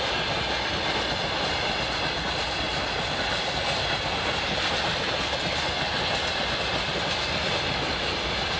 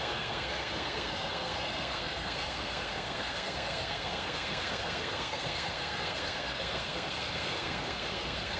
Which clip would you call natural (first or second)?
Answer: first